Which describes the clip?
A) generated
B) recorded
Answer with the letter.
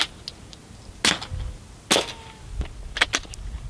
B